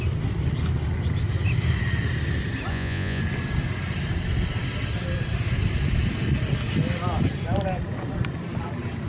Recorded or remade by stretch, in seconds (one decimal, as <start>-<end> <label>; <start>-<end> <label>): 0.0-2.7 recorded; 2.7-3.2 remade; 3.2-9.1 recorded